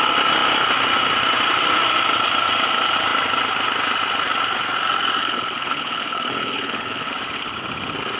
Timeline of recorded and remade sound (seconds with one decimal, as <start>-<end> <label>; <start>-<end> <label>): 0.0-5.2 recorded; 5.2-7.1 remade; 7.1-8.2 recorded